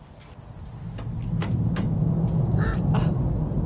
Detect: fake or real real